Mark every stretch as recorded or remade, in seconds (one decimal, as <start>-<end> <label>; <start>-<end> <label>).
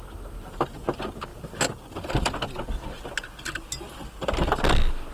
0.0-5.1 recorded